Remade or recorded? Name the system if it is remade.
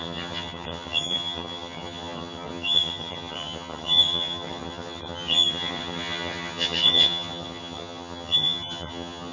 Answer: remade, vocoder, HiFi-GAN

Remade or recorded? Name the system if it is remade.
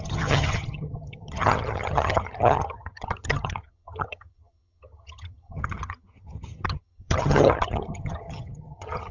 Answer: remade, vocoder, HiFi-GAN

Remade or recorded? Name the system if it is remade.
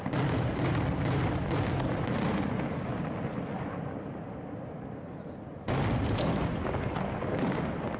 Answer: recorded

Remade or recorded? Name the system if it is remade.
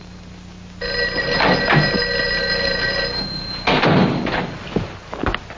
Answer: recorded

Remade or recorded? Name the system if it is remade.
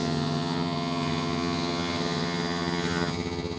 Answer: remade, vocoder, HiFi-GAN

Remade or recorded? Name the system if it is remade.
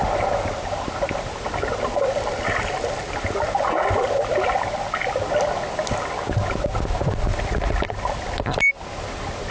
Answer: recorded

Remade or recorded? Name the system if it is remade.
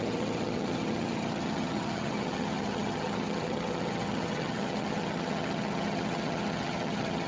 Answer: remade, vocoder, HiFi-GAN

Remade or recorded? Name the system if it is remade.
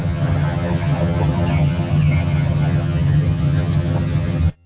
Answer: remade, vocoder, HiFi-GAN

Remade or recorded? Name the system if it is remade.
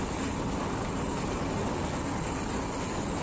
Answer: recorded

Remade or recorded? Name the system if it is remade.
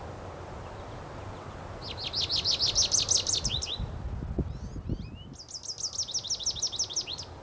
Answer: recorded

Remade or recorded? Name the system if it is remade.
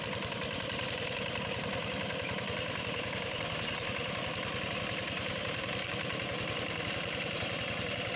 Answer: recorded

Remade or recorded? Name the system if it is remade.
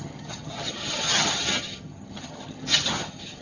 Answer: remade, vocoder, HiFi-GAN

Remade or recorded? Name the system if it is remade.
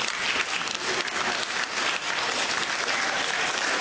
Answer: recorded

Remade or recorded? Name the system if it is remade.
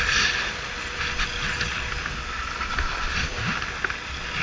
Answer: recorded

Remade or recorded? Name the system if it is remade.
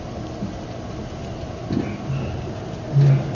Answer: recorded